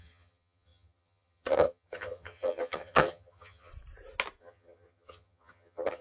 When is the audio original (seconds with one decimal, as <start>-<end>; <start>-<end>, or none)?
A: 3.7-4.4